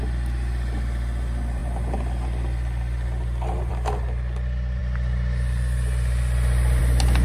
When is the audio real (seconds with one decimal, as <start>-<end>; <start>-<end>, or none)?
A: 0.0-7.2